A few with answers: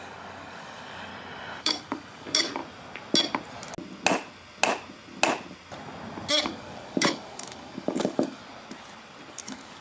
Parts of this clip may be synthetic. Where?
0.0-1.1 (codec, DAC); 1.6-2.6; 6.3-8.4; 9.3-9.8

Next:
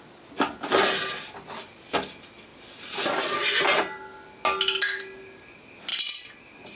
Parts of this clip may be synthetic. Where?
none

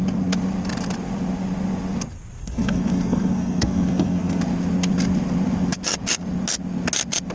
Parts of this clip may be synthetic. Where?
2.4-4.4 (codec, SNAC)